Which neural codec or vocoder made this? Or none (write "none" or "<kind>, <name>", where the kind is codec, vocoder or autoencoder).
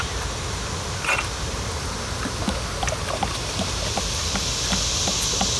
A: none